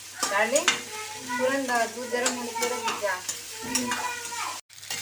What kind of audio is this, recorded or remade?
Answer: recorded